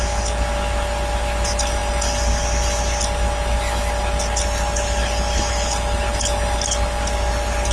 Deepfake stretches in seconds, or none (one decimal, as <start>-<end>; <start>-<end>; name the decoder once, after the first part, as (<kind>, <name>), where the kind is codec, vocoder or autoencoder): none